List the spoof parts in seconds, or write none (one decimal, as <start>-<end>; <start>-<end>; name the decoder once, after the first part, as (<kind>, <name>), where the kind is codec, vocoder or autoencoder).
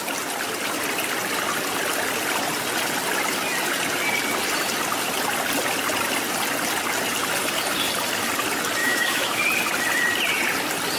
8.8-9.4 (autoencoder, DAC-VAE)